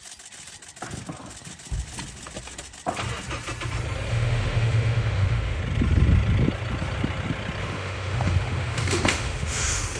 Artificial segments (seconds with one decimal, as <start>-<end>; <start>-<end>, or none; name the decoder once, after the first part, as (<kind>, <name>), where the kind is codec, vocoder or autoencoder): 4.1-5.6 (autoencoder, DAC-VAE); 7.6-10.0